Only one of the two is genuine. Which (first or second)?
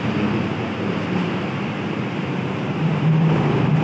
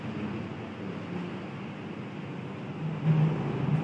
second